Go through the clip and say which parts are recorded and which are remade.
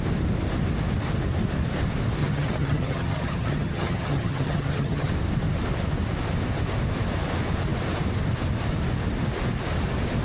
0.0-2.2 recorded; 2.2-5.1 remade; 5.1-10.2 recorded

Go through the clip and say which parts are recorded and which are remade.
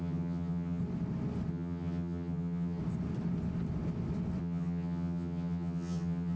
0.0-0.8 remade; 0.8-1.5 recorded; 1.5-2.8 remade; 2.8-4.4 recorded; 4.4-6.4 remade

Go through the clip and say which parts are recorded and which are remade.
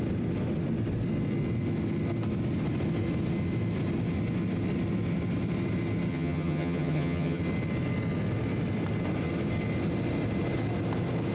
0.0-6.1 recorded; 6.1-7.4 remade; 7.4-11.3 recorded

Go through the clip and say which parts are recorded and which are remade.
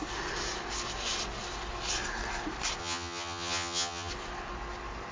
0.0-2.8 recorded; 2.8-4.1 remade; 4.1-5.1 recorded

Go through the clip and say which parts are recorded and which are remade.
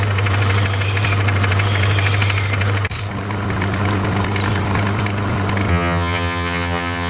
0.0-5.7 recorded; 5.7-7.1 remade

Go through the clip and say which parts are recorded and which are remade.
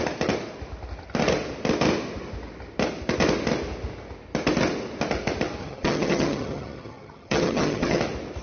0.0-5.6 recorded; 5.6-8.0 remade; 8.0-8.4 recorded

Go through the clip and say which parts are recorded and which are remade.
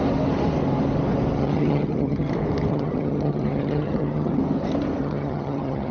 0.0-1.4 recorded; 1.4-2.3 remade; 2.3-2.7 recorded; 2.7-4.4 remade; 4.4-5.0 recorded; 5.0-5.9 remade